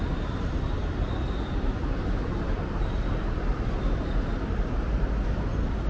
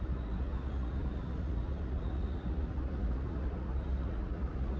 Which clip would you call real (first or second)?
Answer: first